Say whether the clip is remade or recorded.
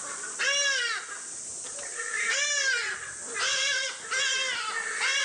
recorded